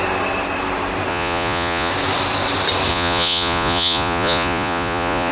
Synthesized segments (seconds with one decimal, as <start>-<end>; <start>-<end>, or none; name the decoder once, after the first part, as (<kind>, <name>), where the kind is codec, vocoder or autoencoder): 1.1-1.9 (vocoder, Vocos); 2.9-5.3